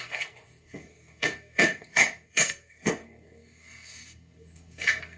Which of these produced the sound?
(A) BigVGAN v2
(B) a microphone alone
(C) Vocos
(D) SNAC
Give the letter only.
D